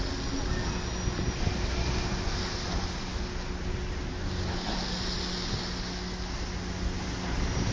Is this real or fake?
real